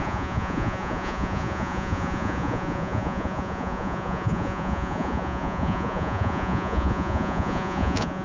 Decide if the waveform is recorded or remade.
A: remade